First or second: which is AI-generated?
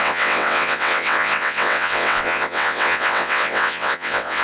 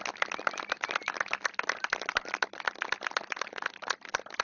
first